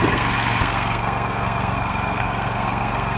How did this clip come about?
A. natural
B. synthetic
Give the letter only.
B